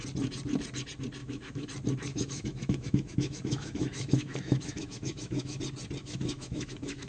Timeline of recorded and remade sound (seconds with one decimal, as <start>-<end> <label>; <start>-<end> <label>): 0.0-1.2 recorded; 1.2-1.7 remade; 1.7-2.1 recorded; 2.1-5.6 remade; 5.6-6.0 recorded; 6.0-7.1 remade